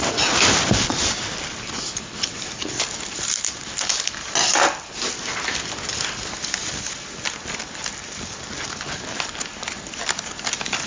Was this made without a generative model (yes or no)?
yes